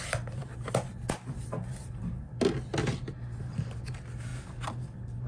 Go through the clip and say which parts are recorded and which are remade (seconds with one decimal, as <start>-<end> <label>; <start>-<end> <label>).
0.0-5.3 recorded